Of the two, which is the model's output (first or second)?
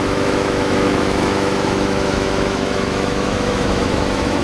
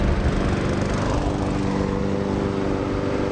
first